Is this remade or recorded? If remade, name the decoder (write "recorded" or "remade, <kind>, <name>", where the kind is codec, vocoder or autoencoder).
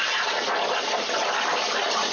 remade, vocoder, BigVGAN v2